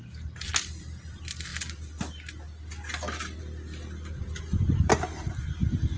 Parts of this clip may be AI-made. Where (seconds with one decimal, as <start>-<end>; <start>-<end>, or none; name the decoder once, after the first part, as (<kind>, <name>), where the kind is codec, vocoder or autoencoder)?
none